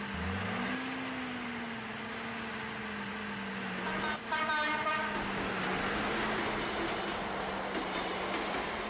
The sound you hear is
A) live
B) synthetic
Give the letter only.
A